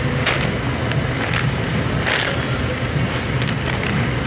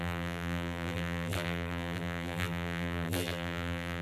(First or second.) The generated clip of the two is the second